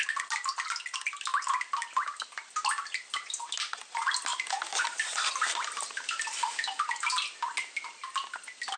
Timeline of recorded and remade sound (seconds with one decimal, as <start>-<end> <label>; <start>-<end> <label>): 0.0-4.3 recorded; 4.3-6.9 remade; 6.9-8.8 recorded